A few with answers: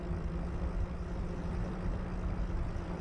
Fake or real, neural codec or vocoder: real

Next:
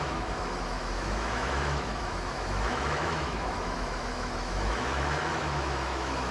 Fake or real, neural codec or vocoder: fake, autoencoder, DAC-VAE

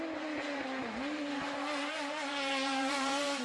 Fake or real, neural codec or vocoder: fake, vocoder, BigVGAN v2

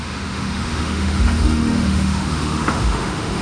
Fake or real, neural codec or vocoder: fake, autoencoder, DAC-VAE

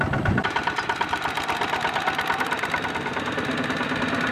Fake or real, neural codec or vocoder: fake, vocoder, BigVGAN v2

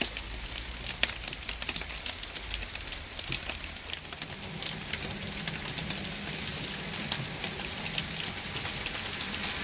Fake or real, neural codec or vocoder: real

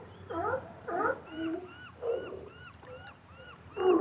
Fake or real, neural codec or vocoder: fake, vocoder, BigVGAN v2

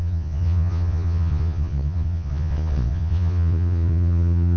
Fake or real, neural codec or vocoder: fake, vocoder, Vocos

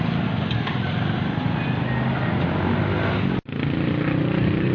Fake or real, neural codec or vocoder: real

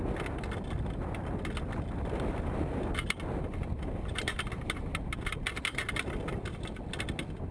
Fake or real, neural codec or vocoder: real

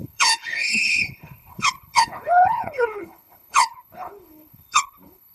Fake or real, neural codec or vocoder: fake, codec, HILCodec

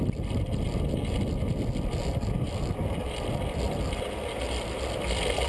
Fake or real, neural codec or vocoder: real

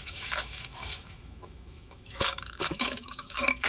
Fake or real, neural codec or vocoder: fake, autoencoder, DAC-VAE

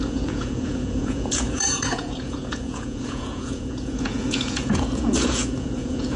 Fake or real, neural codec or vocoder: fake, vocoder, Vocos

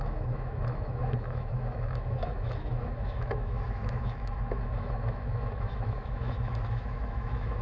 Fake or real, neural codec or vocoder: fake, autoencoder, DAC-VAE